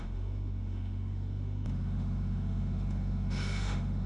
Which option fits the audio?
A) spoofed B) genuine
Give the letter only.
A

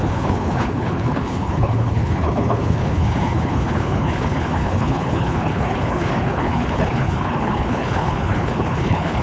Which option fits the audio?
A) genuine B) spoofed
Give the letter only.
B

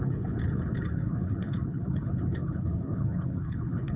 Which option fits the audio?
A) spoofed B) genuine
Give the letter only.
A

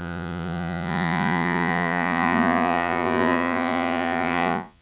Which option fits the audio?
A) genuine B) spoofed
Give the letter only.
B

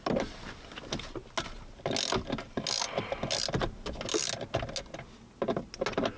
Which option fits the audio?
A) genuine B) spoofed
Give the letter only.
A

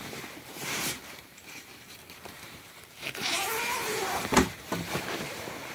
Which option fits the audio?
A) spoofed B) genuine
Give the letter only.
A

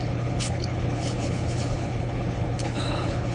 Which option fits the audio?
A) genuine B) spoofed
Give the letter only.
B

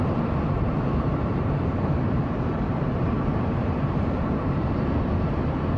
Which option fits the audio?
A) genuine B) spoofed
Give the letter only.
B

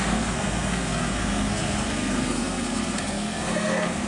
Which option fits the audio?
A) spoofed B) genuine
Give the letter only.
A